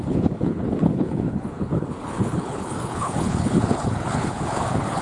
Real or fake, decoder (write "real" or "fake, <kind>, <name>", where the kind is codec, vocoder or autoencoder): fake, codec, HILCodec